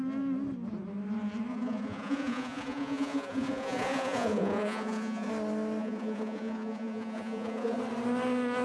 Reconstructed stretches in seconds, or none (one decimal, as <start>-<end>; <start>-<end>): 1.5-5.3; 5.8-7.8